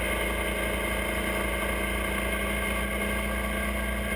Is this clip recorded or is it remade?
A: recorded